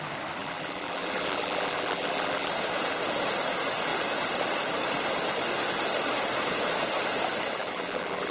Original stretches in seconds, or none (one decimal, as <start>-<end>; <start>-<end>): 0.0-0.4; 2.5-7.6